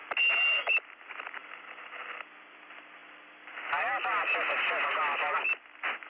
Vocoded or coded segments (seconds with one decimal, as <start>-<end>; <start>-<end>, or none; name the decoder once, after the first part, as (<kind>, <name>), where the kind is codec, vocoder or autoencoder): none